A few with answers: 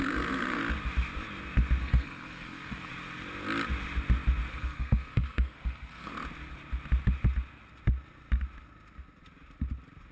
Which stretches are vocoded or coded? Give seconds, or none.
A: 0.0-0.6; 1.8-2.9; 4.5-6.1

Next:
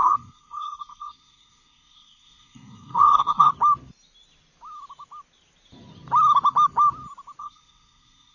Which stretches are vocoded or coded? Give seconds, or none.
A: 0.0-3.5; 7.4-8.3

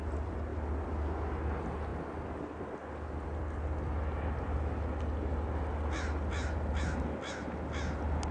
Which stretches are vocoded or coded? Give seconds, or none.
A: none

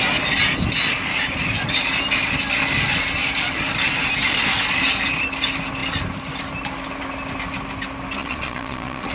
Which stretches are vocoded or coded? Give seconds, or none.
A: 8.2-9.1

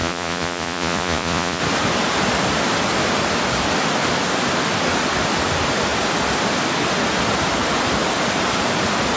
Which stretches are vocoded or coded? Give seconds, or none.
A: 0.0-1.6

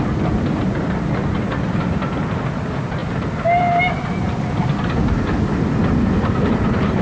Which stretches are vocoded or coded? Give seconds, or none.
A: none